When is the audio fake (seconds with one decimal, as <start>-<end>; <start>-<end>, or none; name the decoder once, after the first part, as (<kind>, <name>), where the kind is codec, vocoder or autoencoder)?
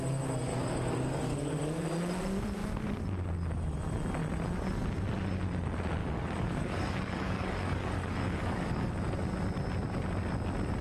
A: 0.5-1.8 (codec, DAC); 6.0-8.9